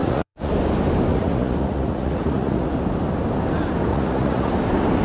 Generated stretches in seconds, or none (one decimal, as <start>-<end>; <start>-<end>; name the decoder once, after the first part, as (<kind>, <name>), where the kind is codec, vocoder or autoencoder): 0.0-0.5 (vocoder, Vocos); 1.1-2.7; 3.9-4.5